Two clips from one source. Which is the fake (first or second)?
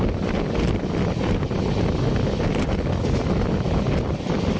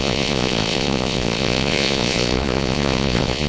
second